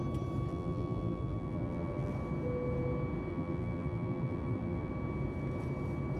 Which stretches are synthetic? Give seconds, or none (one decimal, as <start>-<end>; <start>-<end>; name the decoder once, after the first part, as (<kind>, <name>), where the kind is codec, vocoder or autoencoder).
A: 0.5-2.1 (vocoder, BigVGAN v2); 3.3-4.9